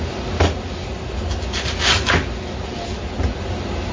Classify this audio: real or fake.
real